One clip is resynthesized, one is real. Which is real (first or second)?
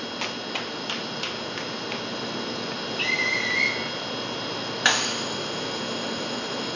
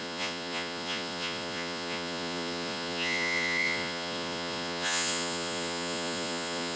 first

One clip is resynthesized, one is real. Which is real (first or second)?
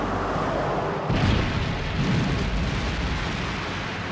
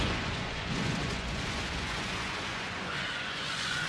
first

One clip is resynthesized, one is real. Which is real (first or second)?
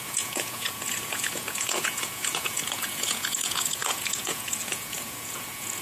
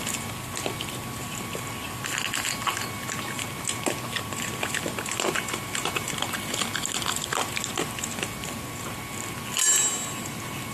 second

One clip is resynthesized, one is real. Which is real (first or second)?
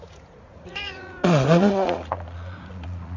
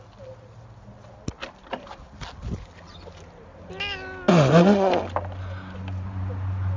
second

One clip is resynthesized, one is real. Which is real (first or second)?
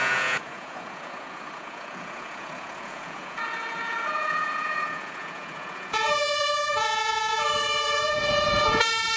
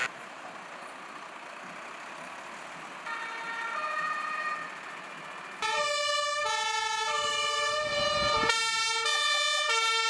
second